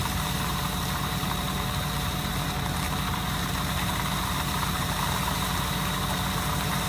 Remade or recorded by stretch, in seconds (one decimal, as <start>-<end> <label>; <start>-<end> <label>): 0.0-6.9 remade